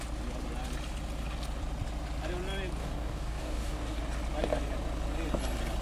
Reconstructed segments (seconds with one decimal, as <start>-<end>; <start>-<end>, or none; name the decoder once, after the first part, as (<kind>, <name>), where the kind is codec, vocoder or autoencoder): 2.8-4.0 (codec, DAC)